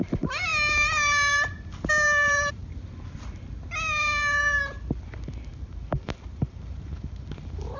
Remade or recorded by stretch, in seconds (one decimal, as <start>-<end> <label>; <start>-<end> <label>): 0.0-0.5 remade; 0.5-1.3 recorded; 1.3-2.6 remade; 2.6-5.5 recorded; 5.5-7.8 remade